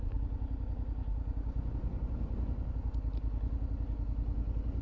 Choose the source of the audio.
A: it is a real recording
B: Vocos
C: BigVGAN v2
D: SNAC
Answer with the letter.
A